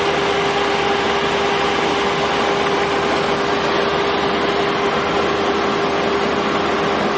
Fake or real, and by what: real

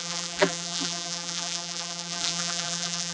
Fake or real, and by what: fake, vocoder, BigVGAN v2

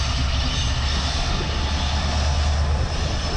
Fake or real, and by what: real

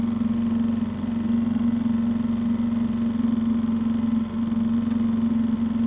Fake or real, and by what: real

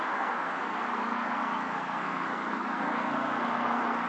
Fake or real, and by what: fake, codec, SNAC